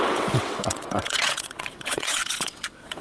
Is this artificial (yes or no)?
yes